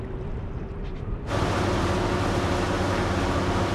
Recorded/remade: recorded